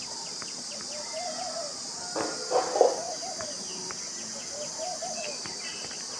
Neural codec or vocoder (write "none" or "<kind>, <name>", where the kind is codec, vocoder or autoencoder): none